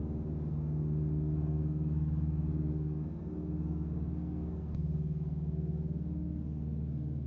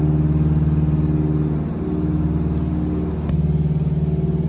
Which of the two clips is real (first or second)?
second